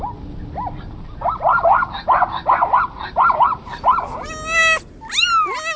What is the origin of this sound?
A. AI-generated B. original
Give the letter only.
B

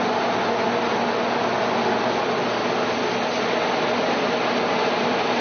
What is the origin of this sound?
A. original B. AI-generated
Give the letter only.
A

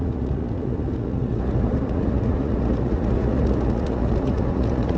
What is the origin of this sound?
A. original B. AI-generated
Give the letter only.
B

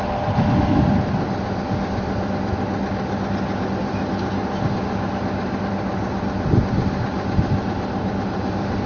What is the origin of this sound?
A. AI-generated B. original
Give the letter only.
B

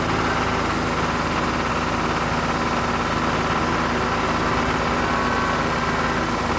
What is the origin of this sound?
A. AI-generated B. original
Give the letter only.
B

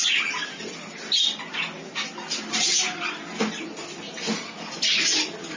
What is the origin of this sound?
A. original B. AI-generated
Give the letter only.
A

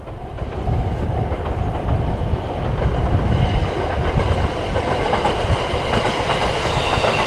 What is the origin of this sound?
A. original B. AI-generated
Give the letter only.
A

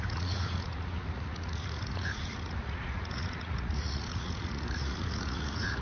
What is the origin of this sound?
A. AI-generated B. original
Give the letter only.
A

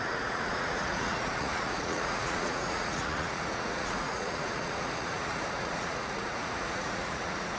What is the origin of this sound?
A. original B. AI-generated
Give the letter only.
B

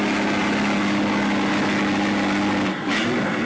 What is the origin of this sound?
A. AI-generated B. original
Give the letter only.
B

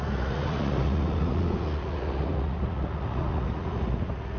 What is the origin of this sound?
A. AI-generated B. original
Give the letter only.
A